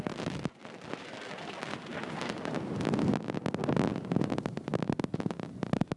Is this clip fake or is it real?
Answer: real